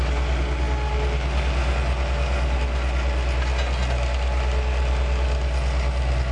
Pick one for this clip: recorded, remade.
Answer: recorded